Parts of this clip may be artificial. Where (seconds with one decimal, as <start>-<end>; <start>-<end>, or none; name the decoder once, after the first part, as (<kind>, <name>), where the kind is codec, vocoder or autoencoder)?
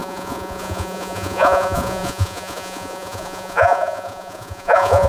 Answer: 0.0-5.1 (vocoder, Vocos)